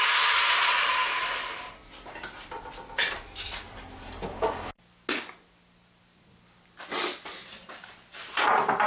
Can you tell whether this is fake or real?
real